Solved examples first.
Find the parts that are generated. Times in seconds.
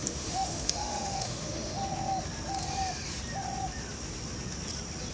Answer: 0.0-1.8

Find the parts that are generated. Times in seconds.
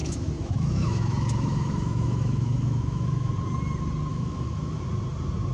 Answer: 0.0-3.3; 4.1-4.8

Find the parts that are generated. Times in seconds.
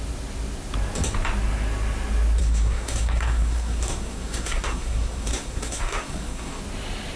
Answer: 2.4-6.6